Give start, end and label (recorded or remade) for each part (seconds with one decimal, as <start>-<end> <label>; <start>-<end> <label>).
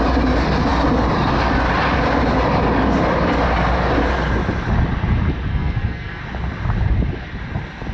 0.0-5.5 recorded; 5.5-6.2 remade; 6.2-7.9 recorded